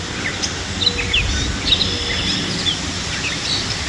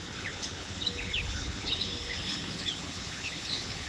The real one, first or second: first